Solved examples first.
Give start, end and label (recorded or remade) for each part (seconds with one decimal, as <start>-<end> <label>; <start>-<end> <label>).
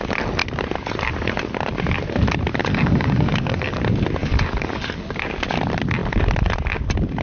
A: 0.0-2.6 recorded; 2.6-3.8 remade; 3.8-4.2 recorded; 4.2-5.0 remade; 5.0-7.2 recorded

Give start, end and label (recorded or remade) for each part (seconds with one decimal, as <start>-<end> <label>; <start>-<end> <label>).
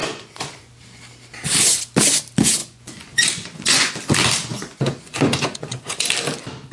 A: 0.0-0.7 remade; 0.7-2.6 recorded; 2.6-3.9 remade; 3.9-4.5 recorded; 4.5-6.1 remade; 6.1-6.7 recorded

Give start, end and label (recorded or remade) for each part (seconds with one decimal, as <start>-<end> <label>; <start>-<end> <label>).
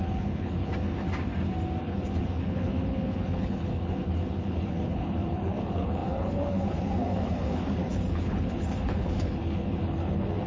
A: 0.0-0.7 remade; 0.7-1.8 recorded; 1.8-10.5 remade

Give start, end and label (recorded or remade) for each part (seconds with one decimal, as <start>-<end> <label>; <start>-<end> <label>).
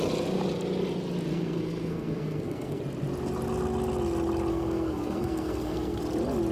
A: 0.0-1.3 recorded; 1.3-2.8 remade; 2.8-4.5 recorded; 4.5-6.0 remade; 6.0-6.5 recorded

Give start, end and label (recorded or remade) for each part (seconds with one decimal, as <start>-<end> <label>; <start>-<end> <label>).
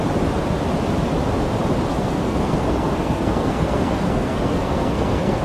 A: 0.0-1.9 recorded; 1.9-5.4 remade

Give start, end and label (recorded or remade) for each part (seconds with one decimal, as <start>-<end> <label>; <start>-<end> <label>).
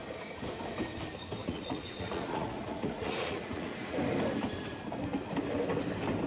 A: 0.0-1.4 recorded; 1.4-4.0 remade; 4.0-6.3 recorded